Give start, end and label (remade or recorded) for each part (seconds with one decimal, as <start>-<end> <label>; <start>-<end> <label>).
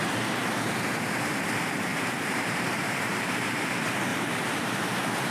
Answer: 0.0-1.9 recorded; 1.9-3.3 remade; 3.3-4.1 recorded; 4.1-5.3 remade